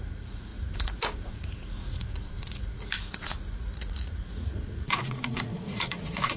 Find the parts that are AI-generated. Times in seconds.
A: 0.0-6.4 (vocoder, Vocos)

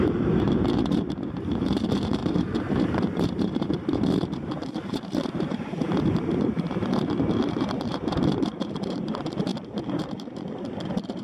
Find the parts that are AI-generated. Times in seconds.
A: 0.0-11.2 (vocoder, BigVGAN v2)